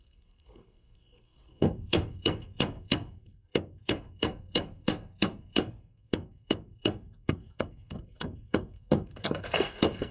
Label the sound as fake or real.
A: fake